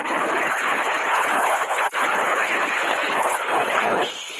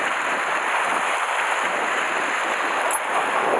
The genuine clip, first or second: second